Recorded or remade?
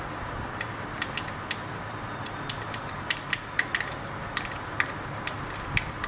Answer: recorded